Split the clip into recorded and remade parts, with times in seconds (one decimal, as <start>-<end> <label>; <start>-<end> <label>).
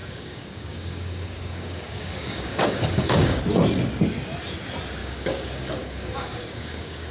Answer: 0.0-3.4 remade; 3.4-5.0 recorded; 5.0-7.1 remade